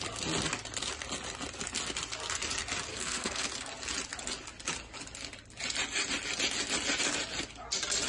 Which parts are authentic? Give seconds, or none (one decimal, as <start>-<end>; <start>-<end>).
0.0-2.9; 3.5-8.1